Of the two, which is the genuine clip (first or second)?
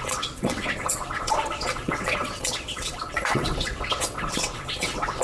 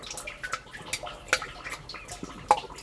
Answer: second